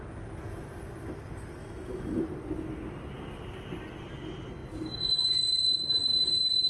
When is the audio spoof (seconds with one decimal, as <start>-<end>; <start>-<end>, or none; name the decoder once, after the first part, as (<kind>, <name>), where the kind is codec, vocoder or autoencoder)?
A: 1.6-2.2 (autoencoder, DAC-VAE)